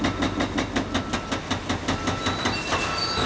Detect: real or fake real